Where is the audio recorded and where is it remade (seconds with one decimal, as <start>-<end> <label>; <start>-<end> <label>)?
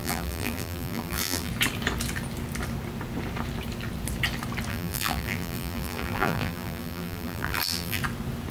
0.0-1.5 remade; 1.5-4.7 recorded; 4.7-8.0 remade; 8.0-8.5 recorded